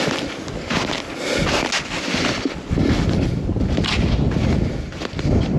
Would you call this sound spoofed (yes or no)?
no